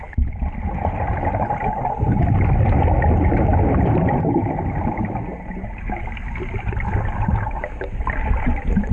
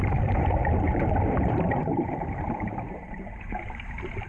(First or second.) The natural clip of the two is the first